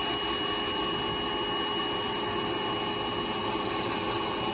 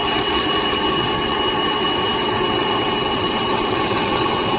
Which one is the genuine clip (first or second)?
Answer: first